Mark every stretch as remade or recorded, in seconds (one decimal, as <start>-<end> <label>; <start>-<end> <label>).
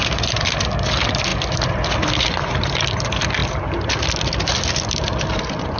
0.0-1.3 remade; 1.3-1.9 recorded; 1.9-3.4 remade; 3.4-4.2 recorded; 4.2-5.8 remade